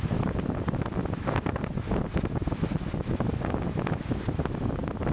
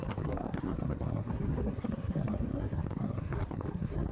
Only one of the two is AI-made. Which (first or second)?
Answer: second